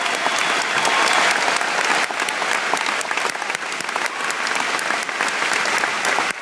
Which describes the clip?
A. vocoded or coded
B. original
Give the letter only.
B